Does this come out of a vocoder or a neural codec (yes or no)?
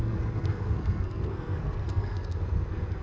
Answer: yes